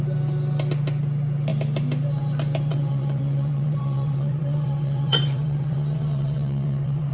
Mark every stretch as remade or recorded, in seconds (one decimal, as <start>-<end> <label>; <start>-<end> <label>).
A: 0.0-2.7 recorded; 2.7-7.1 remade